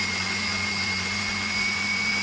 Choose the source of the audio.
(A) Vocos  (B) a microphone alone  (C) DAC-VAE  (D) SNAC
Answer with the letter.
A